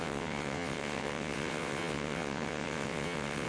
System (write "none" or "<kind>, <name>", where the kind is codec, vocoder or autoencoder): vocoder, WaveNeXt